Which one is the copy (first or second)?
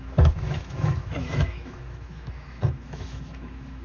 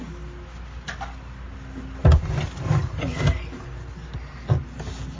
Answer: first